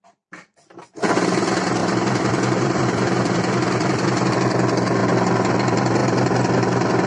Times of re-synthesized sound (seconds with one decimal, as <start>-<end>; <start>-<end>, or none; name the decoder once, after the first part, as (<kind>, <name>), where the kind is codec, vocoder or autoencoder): 1.8-4.3 (vocoder, BigVGAN v2)